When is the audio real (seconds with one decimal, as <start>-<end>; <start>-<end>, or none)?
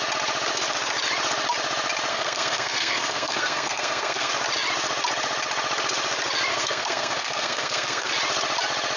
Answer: 0.0-2.1; 4.3-6.5; 8.1-9.0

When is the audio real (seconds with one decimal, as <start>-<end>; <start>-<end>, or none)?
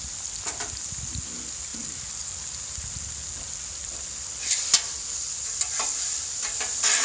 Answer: 0.0-7.0